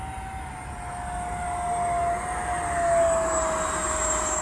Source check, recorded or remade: recorded